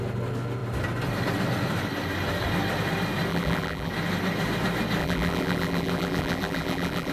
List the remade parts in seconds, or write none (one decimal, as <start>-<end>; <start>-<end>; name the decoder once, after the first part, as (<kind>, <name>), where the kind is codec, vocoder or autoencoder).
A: 3.3-3.9 (vocoder, BigVGAN v2); 5.0-7.1